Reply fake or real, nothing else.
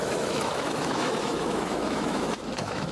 fake